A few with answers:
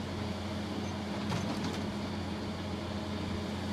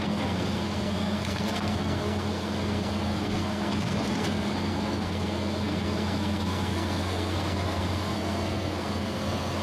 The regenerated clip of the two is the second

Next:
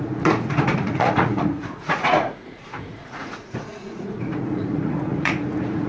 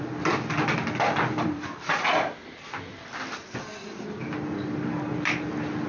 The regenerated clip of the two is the first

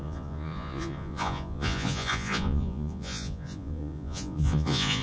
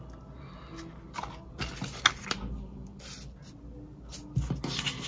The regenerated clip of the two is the first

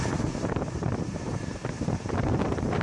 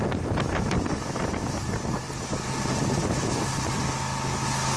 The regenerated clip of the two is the first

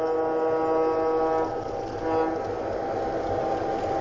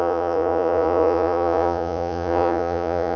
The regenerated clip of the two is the second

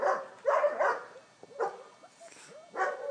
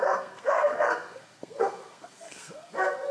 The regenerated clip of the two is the second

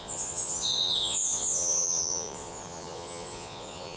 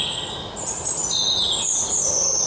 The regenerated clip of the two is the first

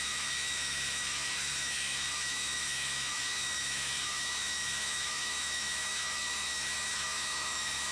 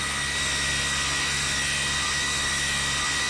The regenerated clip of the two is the first